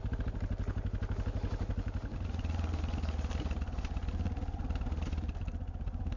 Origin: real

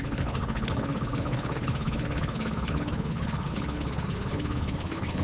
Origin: fake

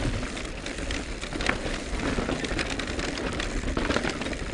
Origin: real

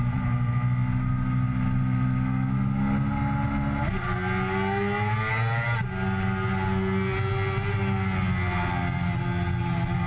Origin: real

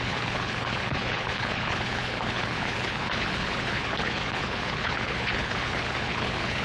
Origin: fake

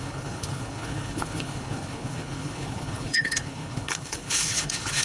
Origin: fake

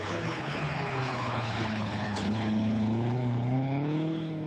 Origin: fake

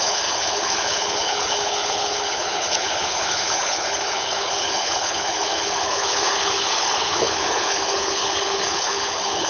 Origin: fake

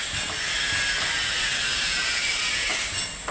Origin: real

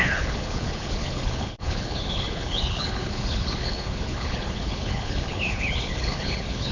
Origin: fake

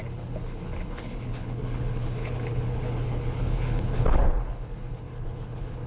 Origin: fake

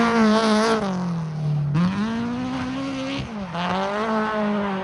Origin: real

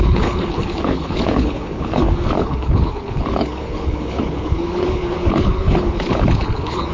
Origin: fake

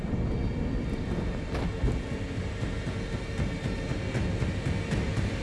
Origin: real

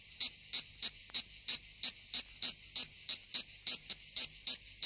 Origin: real